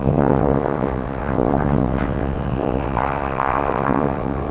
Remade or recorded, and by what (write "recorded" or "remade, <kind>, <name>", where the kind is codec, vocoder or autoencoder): remade, vocoder, WaveNeXt